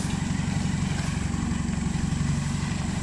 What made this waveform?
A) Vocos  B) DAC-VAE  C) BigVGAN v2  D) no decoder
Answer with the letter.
D